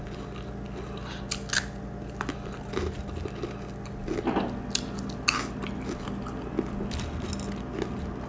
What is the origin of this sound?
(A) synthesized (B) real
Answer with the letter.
B